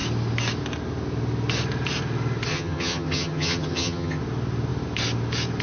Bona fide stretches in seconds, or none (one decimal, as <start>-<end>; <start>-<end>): 0.0-2.5; 4.2-5.6

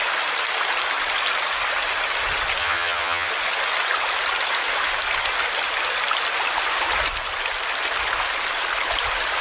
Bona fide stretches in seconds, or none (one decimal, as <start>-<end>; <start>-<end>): 0.0-2.6; 3.3-9.4

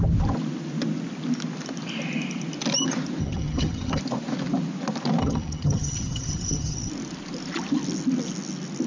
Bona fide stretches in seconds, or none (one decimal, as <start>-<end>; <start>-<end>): 0.0-3.2; 4.0-5.2; 6.9-8.9

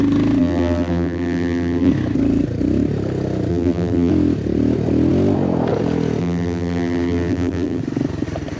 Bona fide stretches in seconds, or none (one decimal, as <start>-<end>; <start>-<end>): 0.0-0.4; 1.9-3.5; 4.1-6.2; 7.8-8.6